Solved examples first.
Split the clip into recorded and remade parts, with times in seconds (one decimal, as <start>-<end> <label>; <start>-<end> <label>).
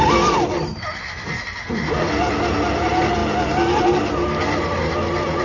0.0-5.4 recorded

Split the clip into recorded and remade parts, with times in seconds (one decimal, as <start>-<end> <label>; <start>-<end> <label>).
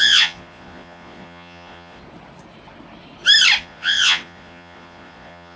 0.0-2.0 remade; 2.0-3.6 recorded; 3.6-5.6 remade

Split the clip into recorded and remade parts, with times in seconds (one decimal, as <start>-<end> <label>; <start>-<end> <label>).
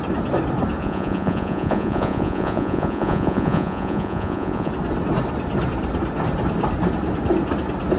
0.0-0.8 recorded; 0.8-4.7 remade; 4.7-8.0 recorded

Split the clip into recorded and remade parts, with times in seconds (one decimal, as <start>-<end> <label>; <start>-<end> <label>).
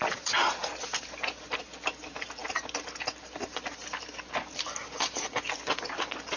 0.0-6.4 recorded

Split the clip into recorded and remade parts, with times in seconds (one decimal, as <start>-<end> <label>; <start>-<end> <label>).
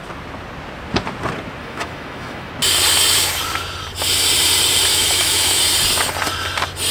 0.0-1.6 recorded; 1.6-2.5 remade; 2.5-4.9 recorded; 4.9-5.6 remade; 5.6-6.9 recorded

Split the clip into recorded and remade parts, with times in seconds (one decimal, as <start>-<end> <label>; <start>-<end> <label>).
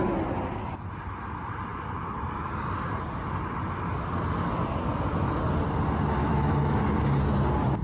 0.0-6.2 recorded; 6.2-6.8 remade; 6.8-7.8 recorded